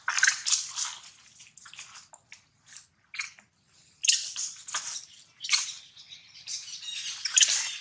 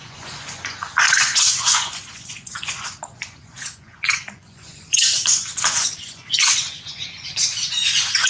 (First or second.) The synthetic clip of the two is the second